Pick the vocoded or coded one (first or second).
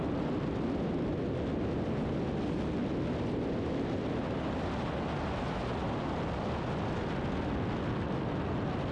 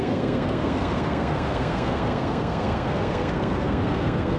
second